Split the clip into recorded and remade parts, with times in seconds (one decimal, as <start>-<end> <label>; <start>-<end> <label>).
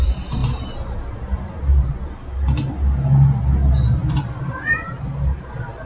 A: 0.0-5.9 recorded